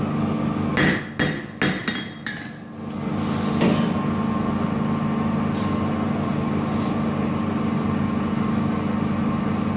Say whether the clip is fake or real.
real